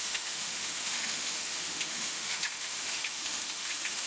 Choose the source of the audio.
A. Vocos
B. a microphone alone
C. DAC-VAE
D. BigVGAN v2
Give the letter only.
C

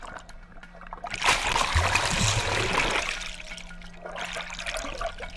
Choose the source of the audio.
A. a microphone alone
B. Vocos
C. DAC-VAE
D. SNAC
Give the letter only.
A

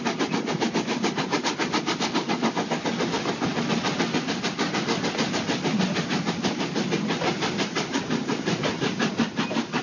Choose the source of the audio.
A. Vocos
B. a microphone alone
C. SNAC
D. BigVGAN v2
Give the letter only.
B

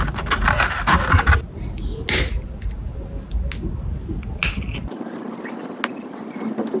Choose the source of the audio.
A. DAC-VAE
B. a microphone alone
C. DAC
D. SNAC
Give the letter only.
B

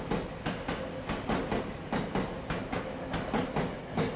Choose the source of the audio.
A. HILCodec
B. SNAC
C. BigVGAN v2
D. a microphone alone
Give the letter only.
D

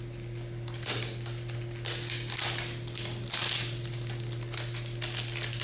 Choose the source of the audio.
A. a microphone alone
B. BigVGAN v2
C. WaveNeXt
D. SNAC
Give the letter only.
A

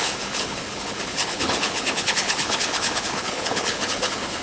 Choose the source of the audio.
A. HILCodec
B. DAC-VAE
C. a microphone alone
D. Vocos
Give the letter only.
A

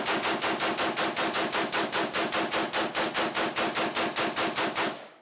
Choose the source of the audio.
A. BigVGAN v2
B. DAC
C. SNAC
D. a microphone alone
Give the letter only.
D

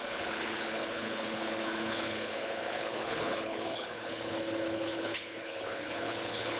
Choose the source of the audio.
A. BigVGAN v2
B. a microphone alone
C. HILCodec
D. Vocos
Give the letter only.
C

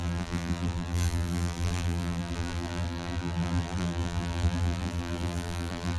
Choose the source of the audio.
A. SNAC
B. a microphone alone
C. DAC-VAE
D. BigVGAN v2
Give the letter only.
D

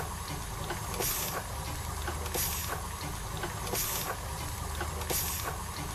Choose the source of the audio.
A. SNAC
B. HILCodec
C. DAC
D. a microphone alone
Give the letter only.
D